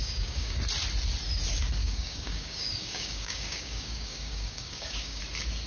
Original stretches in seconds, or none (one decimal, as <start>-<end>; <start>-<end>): 0.6-1.8; 5.2-5.7